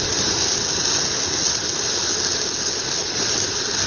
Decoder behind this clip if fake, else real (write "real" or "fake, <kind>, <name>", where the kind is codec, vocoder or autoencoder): real